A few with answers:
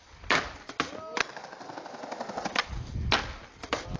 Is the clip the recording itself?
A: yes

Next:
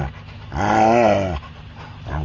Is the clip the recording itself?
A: yes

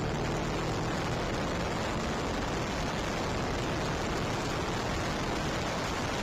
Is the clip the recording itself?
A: yes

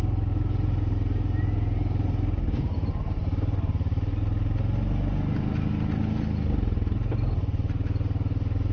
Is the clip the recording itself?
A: yes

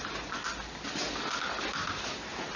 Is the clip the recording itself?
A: yes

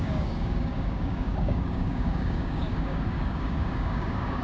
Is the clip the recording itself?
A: no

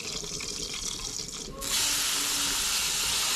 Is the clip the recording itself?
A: yes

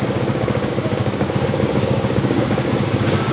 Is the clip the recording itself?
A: no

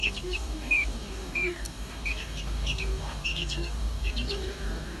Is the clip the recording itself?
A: no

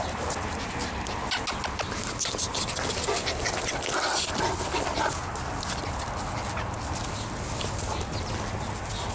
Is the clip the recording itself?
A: yes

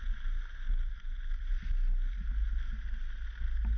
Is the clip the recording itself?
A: yes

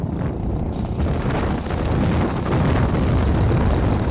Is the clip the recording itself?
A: yes